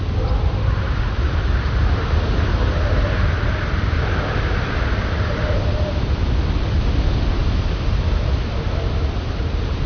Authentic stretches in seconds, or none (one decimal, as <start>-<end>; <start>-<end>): 0.0-9.9